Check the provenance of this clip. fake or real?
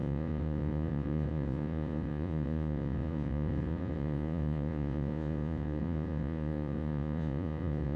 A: fake